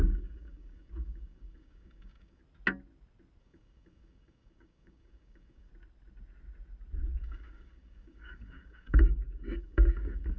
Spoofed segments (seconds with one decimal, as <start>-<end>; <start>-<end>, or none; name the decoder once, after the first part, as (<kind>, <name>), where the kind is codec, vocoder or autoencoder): 0.0-2.4 (codec, DAC); 3.4-5.7; 7.2-10.4